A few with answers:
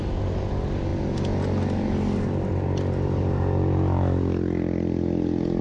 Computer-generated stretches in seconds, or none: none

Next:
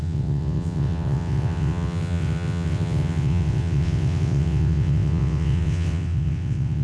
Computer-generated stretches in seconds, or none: 0.0-6.8 (vocoder, WaveNeXt)

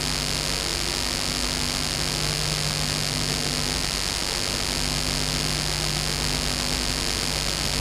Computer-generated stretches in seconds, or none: none

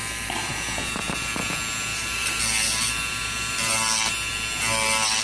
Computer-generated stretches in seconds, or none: 1.9-2.4 (vocoder, BigVGAN v2)

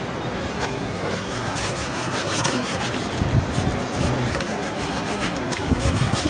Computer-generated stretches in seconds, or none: 0.5-2.8 (codec, SNAC); 4.3-6.3

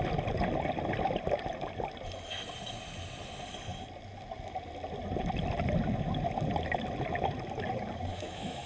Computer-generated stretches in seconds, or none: 8.1-8.7 (autoencoder, DAC-VAE)

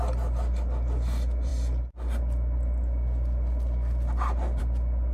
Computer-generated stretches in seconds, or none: none